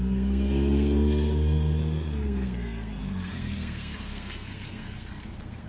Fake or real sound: fake